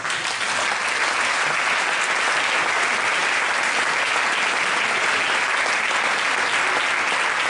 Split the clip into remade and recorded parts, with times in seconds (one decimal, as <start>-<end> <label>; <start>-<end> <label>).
0.0-7.5 recorded

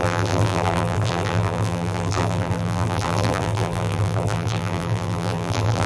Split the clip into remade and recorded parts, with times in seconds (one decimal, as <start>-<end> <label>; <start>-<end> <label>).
0.0-5.9 remade